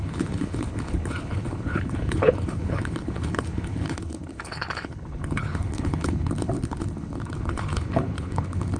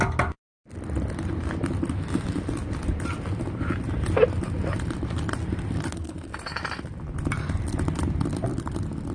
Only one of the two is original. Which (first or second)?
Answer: second